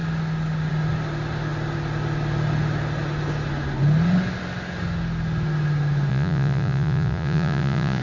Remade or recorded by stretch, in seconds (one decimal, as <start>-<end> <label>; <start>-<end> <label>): 0.0-6.1 recorded; 6.1-8.0 remade